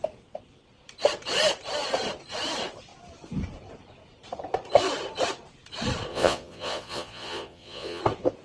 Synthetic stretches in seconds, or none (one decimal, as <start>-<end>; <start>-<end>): 6.1-8.0